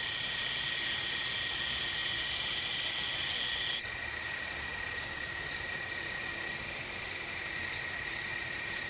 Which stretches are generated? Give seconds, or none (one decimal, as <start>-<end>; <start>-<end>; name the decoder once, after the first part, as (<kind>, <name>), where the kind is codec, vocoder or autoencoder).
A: none